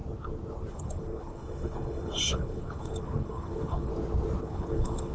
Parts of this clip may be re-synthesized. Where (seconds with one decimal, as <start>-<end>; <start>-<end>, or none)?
0.7-3.9; 4.4-5.1